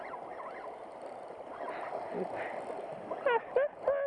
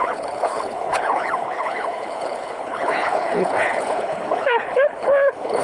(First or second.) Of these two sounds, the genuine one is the first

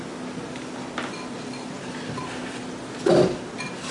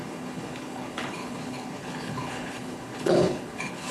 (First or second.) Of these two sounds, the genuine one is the first